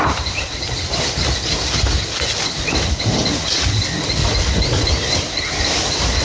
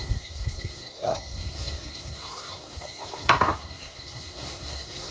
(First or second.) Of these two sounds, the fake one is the second